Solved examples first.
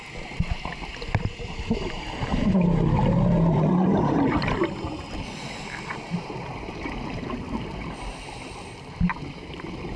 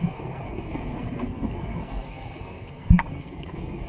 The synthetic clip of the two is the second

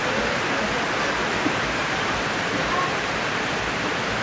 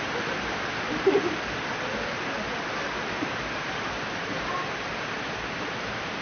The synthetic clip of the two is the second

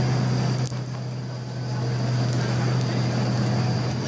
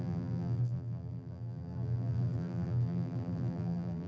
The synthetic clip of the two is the second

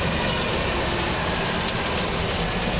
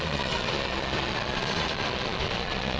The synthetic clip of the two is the second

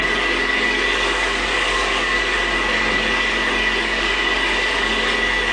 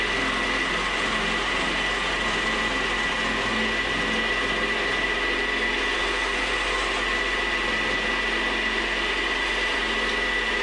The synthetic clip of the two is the first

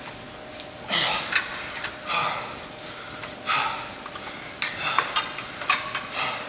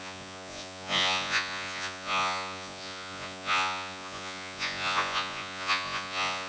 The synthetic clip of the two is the second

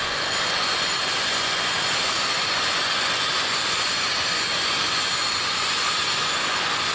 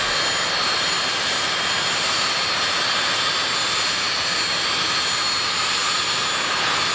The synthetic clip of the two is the first